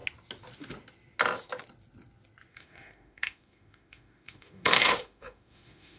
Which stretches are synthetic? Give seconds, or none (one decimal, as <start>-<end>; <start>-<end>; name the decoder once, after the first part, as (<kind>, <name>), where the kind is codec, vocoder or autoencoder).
2.5-6.0 (autoencoder, DAC-VAE)

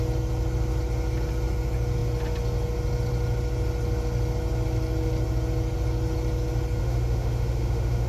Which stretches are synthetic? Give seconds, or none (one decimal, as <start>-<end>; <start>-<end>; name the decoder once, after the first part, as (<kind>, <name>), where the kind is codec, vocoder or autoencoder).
6.8-8.1 (autoencoder, DAC-VAE)

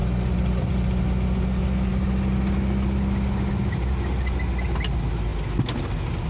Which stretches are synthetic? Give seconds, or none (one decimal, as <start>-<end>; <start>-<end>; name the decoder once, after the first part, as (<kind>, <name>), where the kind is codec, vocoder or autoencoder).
none

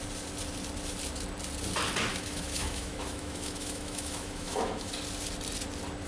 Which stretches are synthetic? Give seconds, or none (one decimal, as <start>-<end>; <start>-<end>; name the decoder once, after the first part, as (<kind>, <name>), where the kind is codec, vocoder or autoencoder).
2.1-4.9 (autoencoder, DAC-VAE)

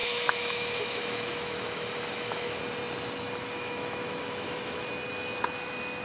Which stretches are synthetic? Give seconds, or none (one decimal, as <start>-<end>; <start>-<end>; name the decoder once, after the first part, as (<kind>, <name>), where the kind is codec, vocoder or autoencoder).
0.0-2.6 (autoencoder, DAC-VAE); 3.4-4.9

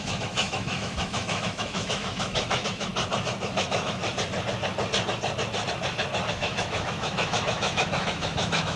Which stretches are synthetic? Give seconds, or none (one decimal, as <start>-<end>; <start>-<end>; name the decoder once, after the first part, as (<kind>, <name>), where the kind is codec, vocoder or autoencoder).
0.0-2.9 (autoencoder, DAC-VAE); 3.6-4.0; 6.3-8.8

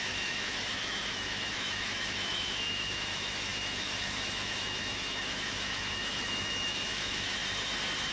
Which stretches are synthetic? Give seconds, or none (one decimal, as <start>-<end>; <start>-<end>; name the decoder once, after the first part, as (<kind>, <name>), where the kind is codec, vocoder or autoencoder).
0.0-7.4 (autoencoder, DAC-VAE)